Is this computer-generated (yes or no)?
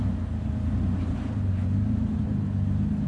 no